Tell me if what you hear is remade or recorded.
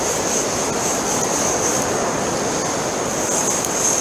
recorded